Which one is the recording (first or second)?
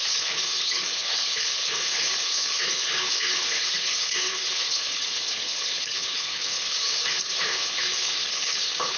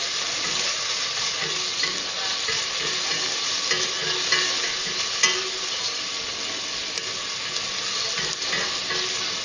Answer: second